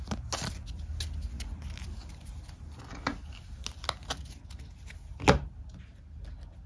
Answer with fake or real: real